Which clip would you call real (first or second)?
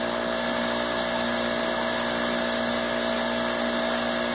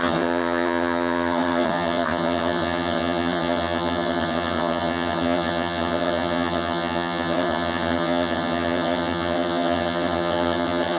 first